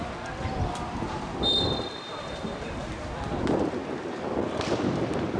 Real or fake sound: real